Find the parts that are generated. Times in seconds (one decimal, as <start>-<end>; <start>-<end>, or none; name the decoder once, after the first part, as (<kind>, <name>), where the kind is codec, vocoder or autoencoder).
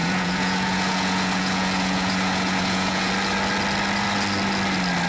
0.0-3.1 (vocoder, Vocos)